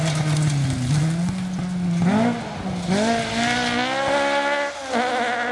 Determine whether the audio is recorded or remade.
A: recorded